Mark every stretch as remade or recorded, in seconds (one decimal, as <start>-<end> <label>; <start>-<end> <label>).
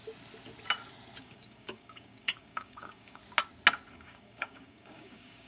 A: 0.0-1.2 recorded; 1.2-3.2 remade; 3.2-3.9 recorded; 3.9-5.5 remade